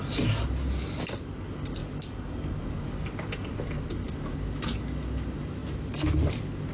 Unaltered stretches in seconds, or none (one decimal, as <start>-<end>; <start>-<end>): 0.0-1.8; 2.6-6.7